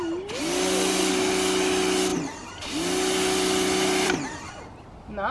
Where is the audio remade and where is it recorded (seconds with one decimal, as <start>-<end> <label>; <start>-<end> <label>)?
0.0-2.1 recorded; 2.1-4.5 remade; 4.5-5.3 recorded